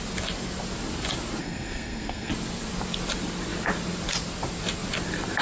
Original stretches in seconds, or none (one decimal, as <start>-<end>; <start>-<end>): 0.0-1.4; 2.3-5.4